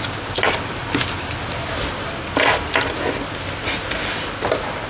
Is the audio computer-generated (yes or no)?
no